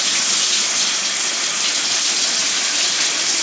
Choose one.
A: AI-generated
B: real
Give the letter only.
B